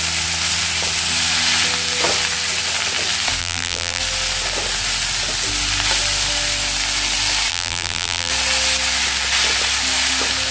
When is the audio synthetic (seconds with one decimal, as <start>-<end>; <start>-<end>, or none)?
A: 3.4-4.0; 7.5-8.3